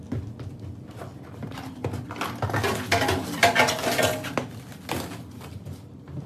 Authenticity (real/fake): real